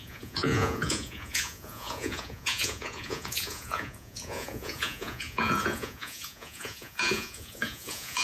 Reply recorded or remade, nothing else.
remade